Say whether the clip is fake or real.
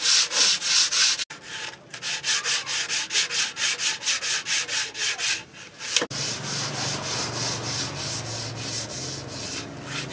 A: real